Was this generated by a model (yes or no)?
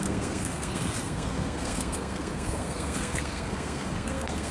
yes